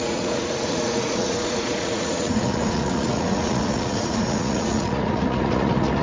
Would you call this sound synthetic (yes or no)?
yes